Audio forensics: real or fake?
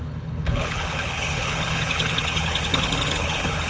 fake